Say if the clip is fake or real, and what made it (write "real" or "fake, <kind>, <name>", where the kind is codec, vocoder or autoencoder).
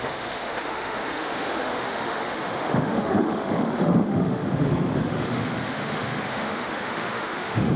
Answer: fake, autoencoder, DAC-VAE